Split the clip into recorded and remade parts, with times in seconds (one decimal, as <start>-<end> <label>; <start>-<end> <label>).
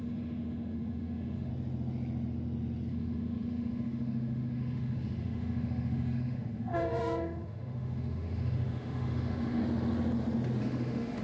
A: 0.0-1.5 remade; 1.5-2.9 recorded; 2.9-9.6 remade; 9.6-10.6 recorded; 10.6-11.2 remade